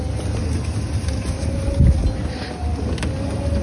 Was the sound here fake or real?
real